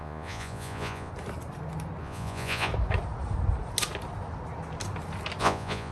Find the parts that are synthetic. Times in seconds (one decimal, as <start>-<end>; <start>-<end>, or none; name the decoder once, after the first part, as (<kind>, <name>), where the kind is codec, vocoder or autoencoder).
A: 0.0-1.1 (vocoder, Vocos); 2.0-2.7; 5.4-5.9